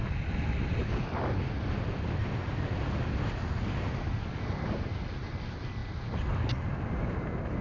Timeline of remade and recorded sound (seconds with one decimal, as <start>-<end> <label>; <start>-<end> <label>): 0.0-7.6 recorded